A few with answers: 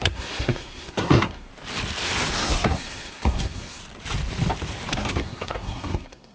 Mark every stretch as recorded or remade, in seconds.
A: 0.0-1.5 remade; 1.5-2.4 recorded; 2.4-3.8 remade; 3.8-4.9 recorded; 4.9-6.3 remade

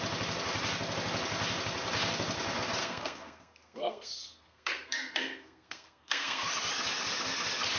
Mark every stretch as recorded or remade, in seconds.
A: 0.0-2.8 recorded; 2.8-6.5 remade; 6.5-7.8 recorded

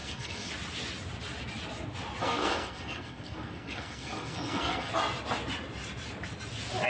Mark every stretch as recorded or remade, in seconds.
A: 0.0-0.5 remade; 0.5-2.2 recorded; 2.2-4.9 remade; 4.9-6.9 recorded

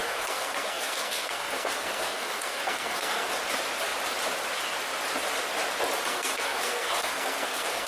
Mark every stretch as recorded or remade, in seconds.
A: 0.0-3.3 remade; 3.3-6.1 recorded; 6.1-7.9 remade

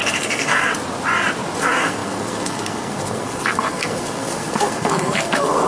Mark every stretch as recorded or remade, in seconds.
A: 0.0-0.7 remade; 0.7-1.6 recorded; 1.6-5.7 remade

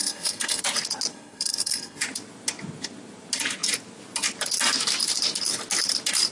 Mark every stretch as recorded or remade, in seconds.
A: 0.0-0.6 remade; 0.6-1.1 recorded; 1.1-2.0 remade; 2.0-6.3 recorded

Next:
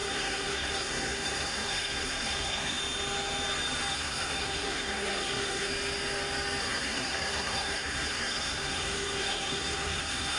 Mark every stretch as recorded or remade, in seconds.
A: 0.0-2.8 remade; 2.8-3.9 recorded; 3.9-5.7 remade; 5.7-6.6 recorded; 6.6-10.4 remade